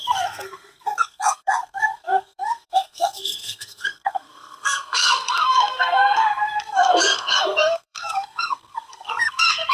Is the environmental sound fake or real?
fake